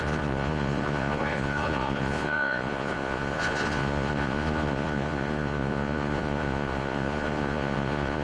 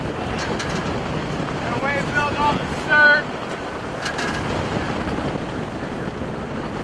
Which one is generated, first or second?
first